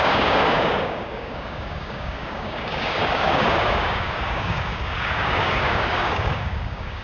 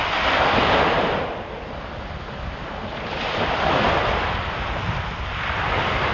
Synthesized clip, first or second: first